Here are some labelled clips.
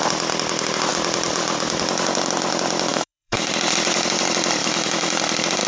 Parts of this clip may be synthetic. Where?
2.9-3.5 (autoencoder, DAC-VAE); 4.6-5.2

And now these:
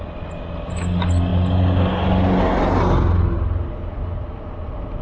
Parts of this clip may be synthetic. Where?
none

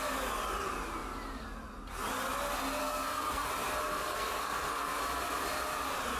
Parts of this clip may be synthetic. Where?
2.8-3.5 (codec, SNAC); 3.9-5.0

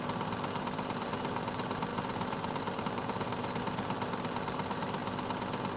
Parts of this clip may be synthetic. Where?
0.0-5.0 (vocoder, BigVGAN v2)

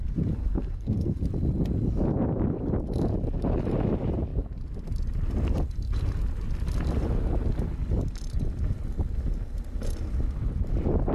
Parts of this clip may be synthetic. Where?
0.5-1.2 (codec, SNAC)

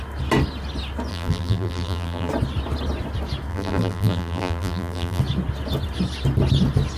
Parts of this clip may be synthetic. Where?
1.1-2.3 (vocoder, BigVGAN v2); 3.5-5.2